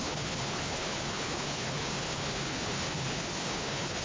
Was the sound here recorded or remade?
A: remade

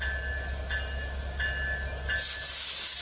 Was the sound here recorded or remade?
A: recorded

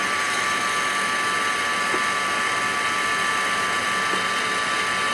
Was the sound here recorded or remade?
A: recorded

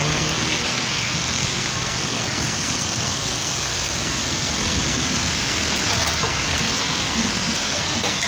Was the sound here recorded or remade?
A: remade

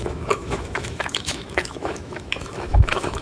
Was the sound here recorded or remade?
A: remade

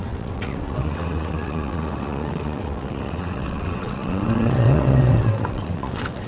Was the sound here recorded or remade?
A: remade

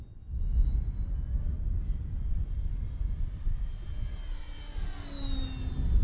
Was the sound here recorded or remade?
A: recorded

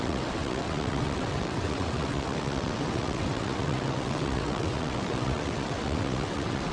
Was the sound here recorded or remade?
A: remade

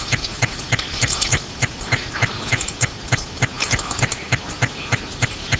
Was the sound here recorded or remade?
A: recorded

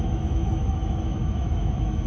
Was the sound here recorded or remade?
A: remade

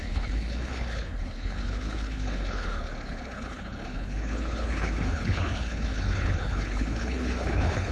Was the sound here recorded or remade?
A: remade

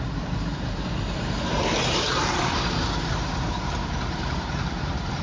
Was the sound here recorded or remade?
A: remade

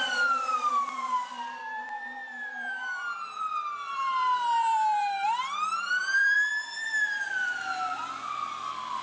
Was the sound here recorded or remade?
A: remade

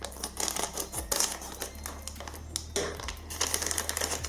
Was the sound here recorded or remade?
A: recorded